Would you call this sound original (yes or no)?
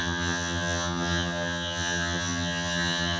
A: no